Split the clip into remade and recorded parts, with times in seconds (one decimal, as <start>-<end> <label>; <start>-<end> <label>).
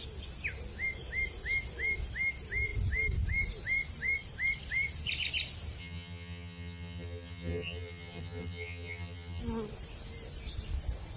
0.0-5.8 recorded; 5.8-9.4 remade; 9.4-11.2 recorded